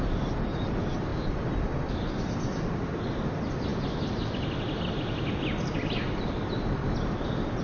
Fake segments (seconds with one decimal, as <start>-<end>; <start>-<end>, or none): none